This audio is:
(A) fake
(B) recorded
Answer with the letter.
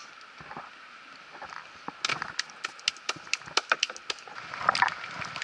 B